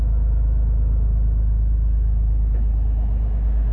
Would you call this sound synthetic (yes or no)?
no